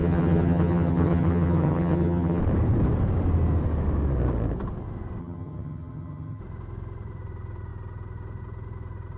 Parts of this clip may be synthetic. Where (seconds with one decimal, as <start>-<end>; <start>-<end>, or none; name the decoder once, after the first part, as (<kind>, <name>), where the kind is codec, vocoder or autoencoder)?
0.0-2.4 (vocoder, HiFi-GAN); 5.2-6.4